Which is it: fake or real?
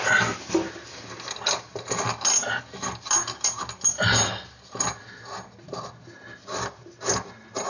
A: real